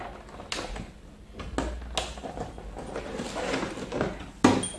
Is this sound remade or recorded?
recorded